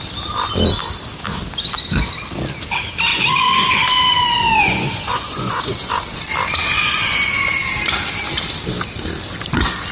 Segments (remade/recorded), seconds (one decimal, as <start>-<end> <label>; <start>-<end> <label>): 0.0-3.1 recorded; 3.1-5.9 remade; 5.9-6.8 recorded; 6.8-7.6 remade; 7.6-9.9 recorded